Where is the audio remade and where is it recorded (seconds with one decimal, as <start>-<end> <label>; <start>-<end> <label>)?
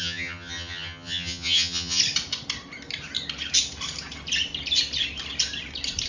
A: 0.0-2.0 remade; 2.0-6.1 recorded